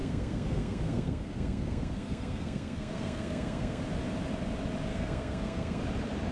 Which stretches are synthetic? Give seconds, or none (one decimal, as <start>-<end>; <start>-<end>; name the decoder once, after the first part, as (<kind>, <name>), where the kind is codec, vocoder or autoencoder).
0.0-3.8 (codec, SNAC); 4.9-5.8